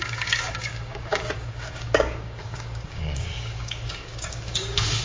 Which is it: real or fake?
fake